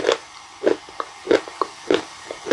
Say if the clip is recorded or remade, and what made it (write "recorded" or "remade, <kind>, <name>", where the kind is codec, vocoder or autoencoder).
remade, vocoder, BigVGAN v2